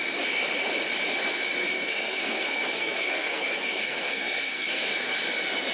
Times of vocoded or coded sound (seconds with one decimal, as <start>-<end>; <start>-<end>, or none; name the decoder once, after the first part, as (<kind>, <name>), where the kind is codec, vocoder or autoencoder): 1.6-4.8 (codec, SNAC)